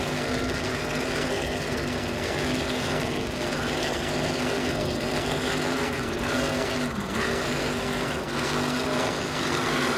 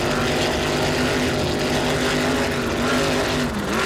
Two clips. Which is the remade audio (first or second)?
first